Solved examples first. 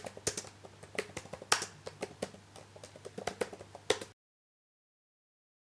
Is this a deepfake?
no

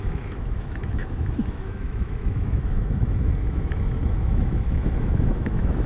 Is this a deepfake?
yes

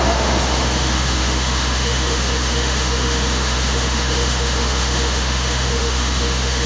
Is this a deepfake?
yes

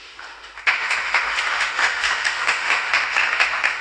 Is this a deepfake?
yes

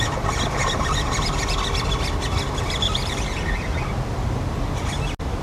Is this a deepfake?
no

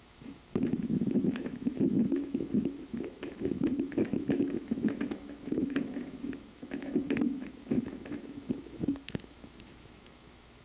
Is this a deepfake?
yes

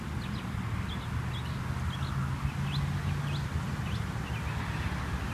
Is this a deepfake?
no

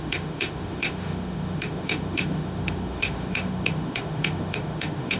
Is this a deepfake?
yes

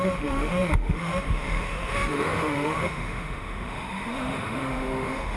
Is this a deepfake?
yes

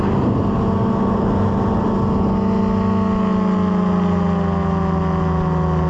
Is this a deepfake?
no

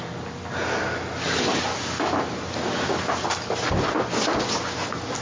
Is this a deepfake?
no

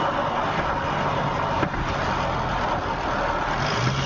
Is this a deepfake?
no